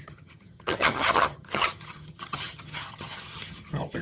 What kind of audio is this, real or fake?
fake